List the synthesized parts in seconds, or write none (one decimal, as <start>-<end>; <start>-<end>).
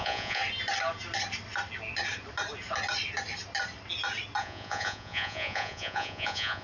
0.0-0.4; 4.4-6.6